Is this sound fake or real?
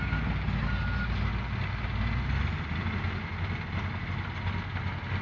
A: real